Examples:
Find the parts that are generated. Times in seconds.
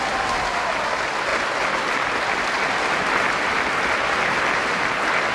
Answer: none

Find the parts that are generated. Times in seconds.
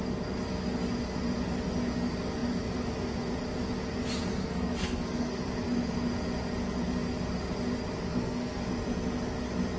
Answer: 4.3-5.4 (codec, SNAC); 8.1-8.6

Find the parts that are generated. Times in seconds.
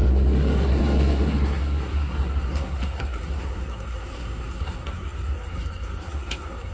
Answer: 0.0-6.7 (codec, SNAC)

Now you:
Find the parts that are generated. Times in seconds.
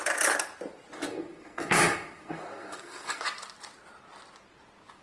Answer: 1.1-3.2 (codec, SNAC)